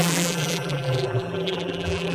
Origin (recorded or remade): remade